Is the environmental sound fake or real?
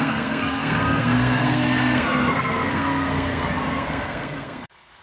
fake